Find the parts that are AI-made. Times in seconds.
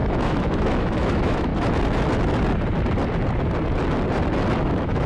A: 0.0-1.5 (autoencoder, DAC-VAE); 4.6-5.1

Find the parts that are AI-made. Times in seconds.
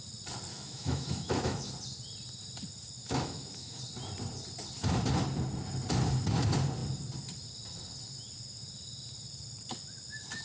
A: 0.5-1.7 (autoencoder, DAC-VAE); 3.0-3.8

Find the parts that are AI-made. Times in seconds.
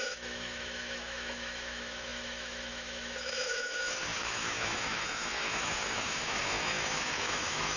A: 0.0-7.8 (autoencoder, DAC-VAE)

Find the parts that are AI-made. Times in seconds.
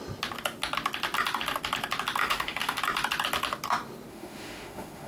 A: 2.2-2.8 (autoencoder, DAC-VAE); 4.1-5.1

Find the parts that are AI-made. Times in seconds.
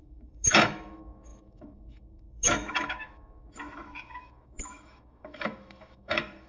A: 0.0-6.5 (autoencoder, DAC-VAE)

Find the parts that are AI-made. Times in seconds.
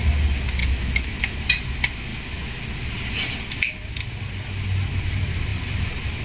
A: 0.6-1.4 (autoencoder, DAC-VAE); 2.1-2.6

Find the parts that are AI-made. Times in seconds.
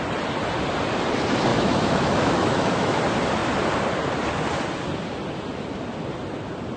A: 1.5-3.0 (autoencoder, DAC-VAE)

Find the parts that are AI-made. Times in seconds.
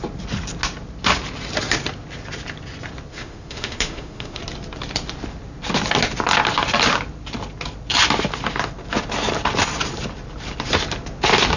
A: 3.1-4.4 (autoencoder, DAC-VAE)